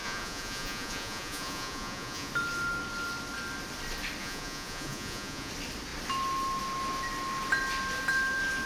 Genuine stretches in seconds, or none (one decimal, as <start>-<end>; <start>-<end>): 2.3-4.2; 5.5-8.7